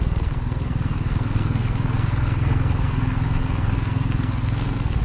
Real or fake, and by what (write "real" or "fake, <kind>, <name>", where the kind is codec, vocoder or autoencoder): fake, codec, SNAC